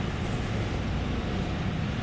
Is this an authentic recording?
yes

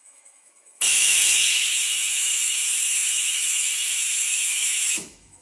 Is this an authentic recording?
no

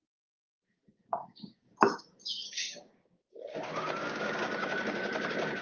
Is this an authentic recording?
no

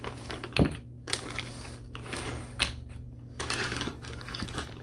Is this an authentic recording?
no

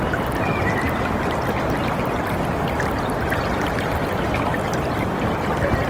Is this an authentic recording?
yes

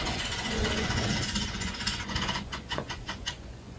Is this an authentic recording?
no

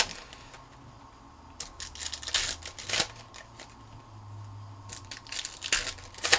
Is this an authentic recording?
yes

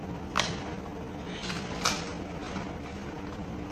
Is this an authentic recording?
yes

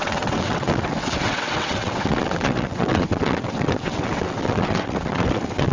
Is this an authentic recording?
no